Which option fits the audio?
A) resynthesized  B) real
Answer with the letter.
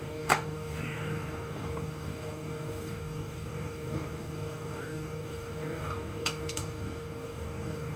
A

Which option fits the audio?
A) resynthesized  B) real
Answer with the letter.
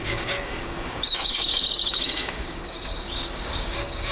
A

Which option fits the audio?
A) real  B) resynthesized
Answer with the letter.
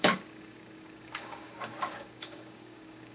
B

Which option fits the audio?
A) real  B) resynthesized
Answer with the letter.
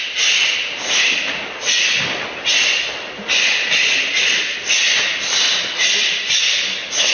A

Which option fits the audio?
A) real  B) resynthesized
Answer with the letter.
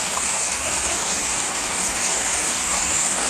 B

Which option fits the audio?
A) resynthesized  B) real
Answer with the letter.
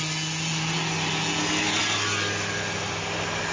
B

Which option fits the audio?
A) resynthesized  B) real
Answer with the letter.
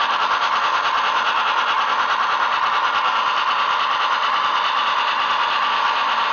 B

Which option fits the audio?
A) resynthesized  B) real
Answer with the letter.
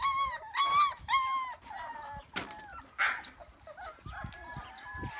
B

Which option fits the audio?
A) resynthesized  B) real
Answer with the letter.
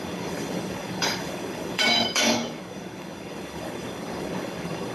A